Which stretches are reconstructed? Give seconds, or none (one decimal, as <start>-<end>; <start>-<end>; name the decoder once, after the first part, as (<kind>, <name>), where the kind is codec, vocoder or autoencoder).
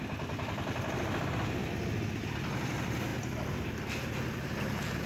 0.0-1.6 (vocoder, BigVGAN v2); 2.1-3.1; 3.7-5.1